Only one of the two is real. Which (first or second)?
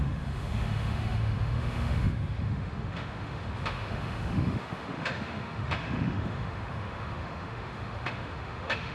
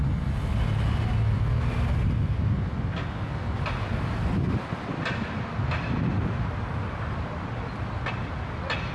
second